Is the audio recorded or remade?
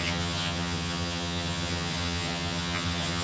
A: remade